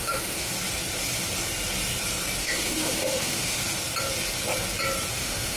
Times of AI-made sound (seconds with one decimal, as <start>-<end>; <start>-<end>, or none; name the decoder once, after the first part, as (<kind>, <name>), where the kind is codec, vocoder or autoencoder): 0.0-0.5 (autoencoder, DAC-VAE); 2.4-3.6; 5.1-5.6